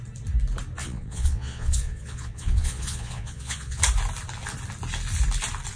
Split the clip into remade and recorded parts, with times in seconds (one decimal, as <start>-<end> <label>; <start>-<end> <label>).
0.0-0.8 recorded; 0.8-3.8 remade; 3.8-5.8 recorded